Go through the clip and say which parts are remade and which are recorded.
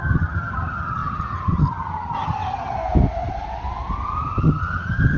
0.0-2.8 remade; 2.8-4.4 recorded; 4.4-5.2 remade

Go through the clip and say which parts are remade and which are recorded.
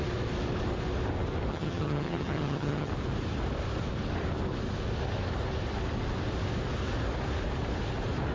0.0-1.5 recorded; 1.5-2.9 remade; 2.9-8.3 recorded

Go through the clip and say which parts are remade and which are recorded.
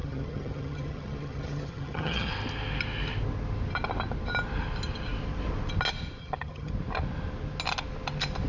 0.0-2.3 remade; 2.3-6.2 recorded; 6.2-6.7 remade; 6.7-8.5 recorded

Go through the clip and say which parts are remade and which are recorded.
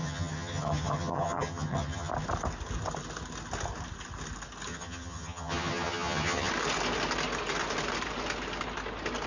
0.0-2.1 remade; 2.1-4.7 recorded; 4.7-6.5 remade; 6.5-9.3 recorded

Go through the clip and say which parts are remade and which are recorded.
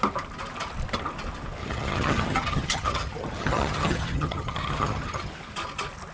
0.0-1.6 recorded; 1.6-5.3 remade; 5.3-6.1 recorded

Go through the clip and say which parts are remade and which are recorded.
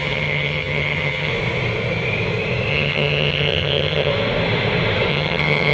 0.0-1.3 remade; 1.3-2.7 recorded; 2.7-4.1 remade; 4.1-5.1 recorded; 5.1-5.7 remade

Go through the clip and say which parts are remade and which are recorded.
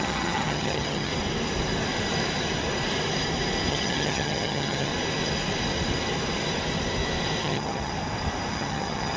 0.0-1.1 remade; 1.1-3.7 recorded; 3.7-4.9 remade; 4.9-7.4 recorded; 7.4-7.9 remade; 7.9-8.5 recorded; 8.5-9.2 remade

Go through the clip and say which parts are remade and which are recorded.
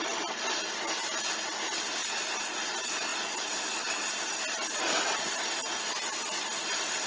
0.0-7.1 recorded